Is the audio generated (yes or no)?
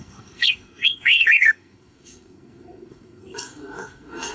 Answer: yes